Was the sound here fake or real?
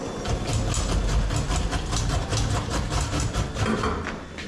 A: real